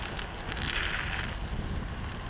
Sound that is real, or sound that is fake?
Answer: real